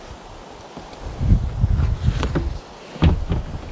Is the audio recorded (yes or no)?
yes